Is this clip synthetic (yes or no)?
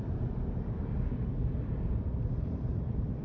yes